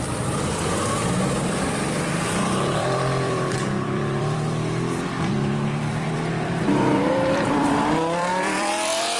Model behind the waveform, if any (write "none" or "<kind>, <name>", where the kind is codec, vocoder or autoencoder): vocoder, BigVGAN v2